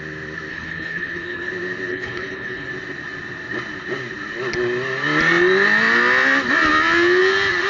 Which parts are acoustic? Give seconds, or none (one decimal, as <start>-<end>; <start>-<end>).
0.0-0.5; 1.5-1.9; 2.7-7.7